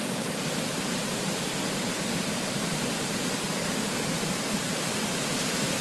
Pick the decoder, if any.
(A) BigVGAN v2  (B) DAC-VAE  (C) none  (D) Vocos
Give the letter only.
A